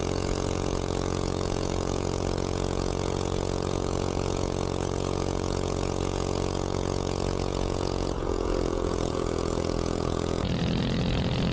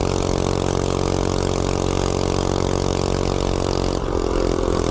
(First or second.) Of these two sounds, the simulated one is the first